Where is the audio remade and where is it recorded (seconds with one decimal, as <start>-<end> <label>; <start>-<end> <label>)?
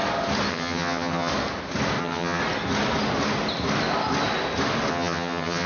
0.0-0.5 recorded; 0.5-1.3 remade; 1.3-2.0 recorded; 2.0-2.4 remade; 2.4-4.9 recorded; 4.9-5.7 remade